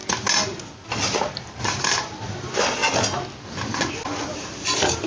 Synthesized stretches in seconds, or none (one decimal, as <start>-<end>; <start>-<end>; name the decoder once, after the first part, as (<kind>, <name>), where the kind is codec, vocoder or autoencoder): 1.8-2.8 (vocoder, BigVGAN v2); 4.2-5.1